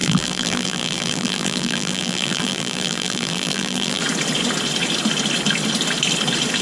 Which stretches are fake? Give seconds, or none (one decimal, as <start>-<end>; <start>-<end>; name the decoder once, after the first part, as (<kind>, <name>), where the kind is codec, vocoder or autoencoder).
0.0-4.0 (vocoder, BigVGAN v2)